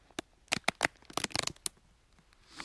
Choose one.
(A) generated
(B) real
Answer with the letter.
B